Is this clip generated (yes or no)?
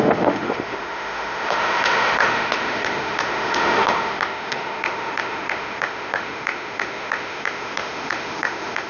yes